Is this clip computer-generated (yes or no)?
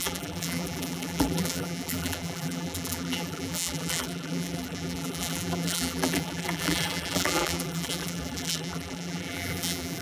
yes